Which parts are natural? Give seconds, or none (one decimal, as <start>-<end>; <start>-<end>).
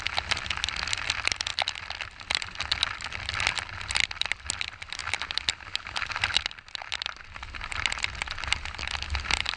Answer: 0.0-9.6